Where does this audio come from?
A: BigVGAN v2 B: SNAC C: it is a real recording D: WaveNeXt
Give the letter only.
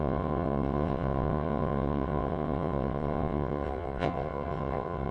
D